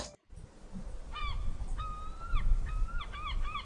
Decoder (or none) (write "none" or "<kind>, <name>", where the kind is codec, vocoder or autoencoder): none